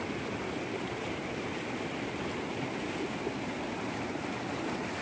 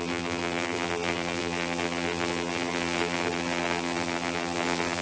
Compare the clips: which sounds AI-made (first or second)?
second